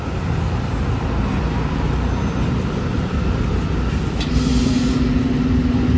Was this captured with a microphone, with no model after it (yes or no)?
yes